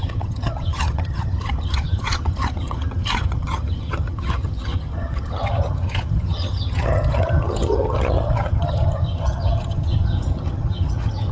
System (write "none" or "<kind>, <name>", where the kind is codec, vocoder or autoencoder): vocoder, HiFi-GAN